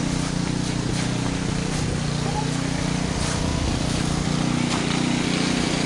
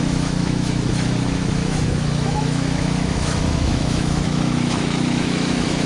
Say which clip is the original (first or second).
first